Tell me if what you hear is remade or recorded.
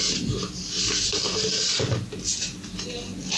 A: recorded